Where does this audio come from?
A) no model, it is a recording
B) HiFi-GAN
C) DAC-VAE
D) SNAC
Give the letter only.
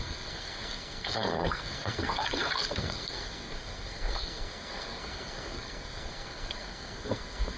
D